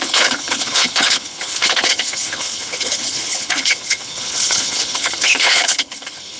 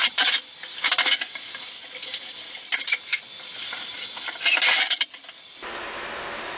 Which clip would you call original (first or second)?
second